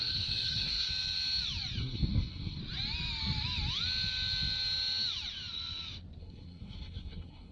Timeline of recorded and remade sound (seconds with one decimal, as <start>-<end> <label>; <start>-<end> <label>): 0.0-0.9 remade; 0.9-1.8 recorded; 1.8-2.6 remade; 2.6-6.2 recorded; 6.2-7.5 remade

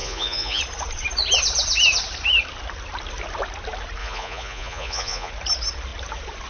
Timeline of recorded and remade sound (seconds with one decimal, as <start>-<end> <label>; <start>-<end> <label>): 0.0-0.6 remade; 0.6-4.0 recorded; 4.0-5.3 remade; 5.3-6.5 recorded

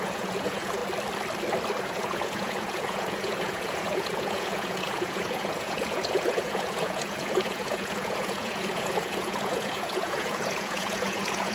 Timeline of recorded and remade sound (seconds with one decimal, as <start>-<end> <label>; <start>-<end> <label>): 0.0-0.8 remade; 0.8-1.8 recorded; 1.8-11.5 remade

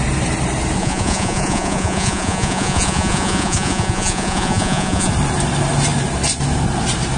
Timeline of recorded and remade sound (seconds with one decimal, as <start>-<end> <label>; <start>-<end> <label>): 0.0-0.8 recorded; 0.8-5.1 remade; 5.1-7.2 recorded

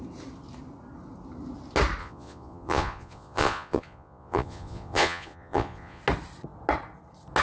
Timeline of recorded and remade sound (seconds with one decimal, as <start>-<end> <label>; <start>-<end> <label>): 0.0-2.0 recorded; 2.0-6.0 remade; 6.0-7.4 recorded

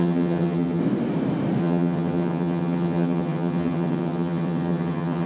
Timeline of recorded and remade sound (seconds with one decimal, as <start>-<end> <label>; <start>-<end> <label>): 0.0-0.8 remade; 0.8-1.6 recorded; 1.6-5.3 remade

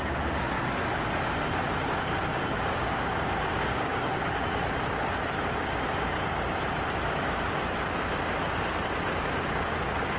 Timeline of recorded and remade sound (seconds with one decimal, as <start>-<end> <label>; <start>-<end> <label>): 0.0-2.3 recorded; 2.3-4.4 remade; 4.4-10.2 recorded